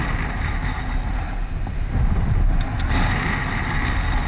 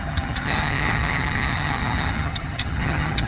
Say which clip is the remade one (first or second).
second